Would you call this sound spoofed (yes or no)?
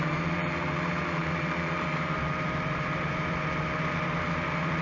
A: yes